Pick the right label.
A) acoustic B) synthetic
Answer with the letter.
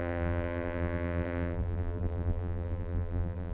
B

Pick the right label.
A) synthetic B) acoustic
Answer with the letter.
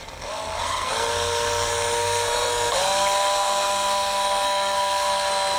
A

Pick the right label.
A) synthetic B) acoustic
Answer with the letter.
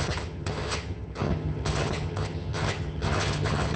A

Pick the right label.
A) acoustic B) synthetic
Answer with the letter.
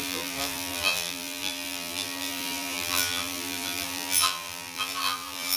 B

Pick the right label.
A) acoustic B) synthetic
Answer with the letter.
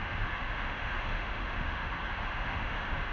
B